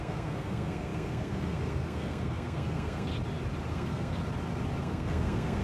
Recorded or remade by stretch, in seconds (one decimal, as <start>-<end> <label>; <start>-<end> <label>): 0.0-3.1 remade; 3.1-3.7 recorded; 3.7-4.2 remade; 4.2-4.8 recorded; 4.8-5.6 remade